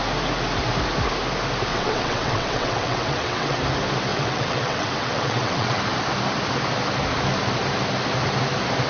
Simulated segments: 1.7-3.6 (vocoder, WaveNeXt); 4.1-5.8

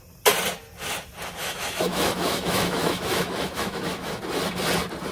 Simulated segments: 1.4-4.2 (autoencoder, DAC-VAE)